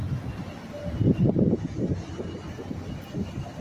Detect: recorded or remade recorded